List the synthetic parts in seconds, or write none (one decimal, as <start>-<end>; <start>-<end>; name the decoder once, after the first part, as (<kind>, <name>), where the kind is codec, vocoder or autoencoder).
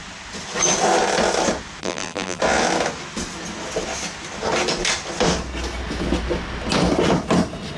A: 1.8-2.4 (vocoder, BigVGAN v2)